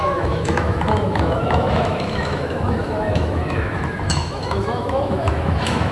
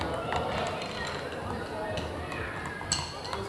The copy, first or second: first